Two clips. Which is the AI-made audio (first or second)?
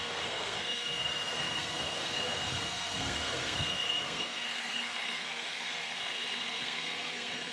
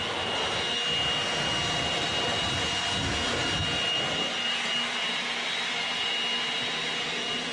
first